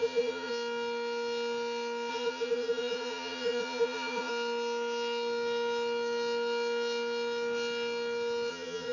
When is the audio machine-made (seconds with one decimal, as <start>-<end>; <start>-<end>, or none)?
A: 0.0-0.5; 2.1-4.3; 8.5-8.9

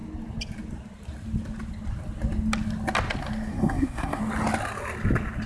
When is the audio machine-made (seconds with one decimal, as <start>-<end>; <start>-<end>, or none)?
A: 3.5-4.2

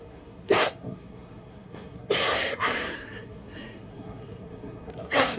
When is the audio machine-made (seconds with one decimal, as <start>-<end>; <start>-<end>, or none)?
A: 0.0-5.4

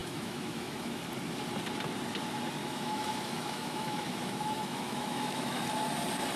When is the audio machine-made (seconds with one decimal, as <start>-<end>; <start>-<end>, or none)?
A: 0.0-1.0; 2.6-5.6